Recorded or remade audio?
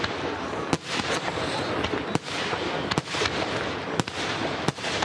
recorded